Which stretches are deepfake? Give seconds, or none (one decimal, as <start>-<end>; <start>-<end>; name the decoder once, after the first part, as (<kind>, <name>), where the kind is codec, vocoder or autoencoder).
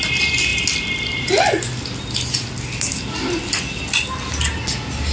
none